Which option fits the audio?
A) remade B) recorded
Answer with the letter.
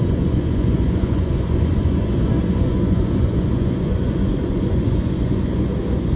A